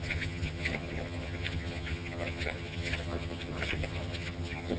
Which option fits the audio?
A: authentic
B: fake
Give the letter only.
B